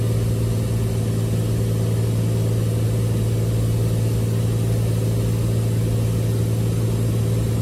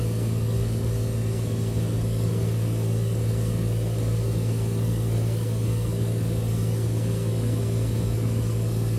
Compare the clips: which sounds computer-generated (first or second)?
second